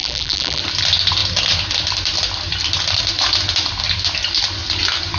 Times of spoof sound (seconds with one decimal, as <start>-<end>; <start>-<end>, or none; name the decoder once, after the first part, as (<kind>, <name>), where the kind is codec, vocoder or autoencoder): 0.0-0.6 (vocoder, BigVGAN v2)